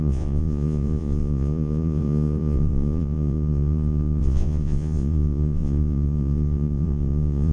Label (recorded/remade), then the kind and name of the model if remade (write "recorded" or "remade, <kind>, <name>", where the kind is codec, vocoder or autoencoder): remade, vocoder, Vocos